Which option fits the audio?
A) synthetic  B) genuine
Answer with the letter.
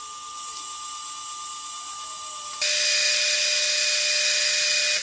B